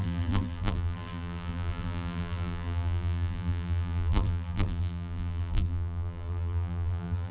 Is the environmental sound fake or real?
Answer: fake